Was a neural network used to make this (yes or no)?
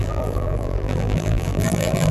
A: yes